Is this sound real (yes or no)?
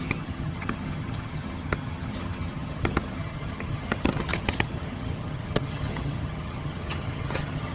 no